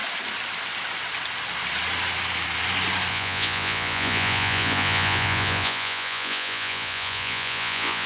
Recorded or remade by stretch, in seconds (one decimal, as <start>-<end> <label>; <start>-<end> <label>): 0.0-3.1 recorded; 3.1-8.1 remade